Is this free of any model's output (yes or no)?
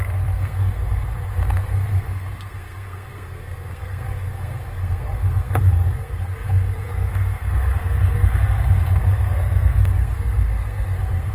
no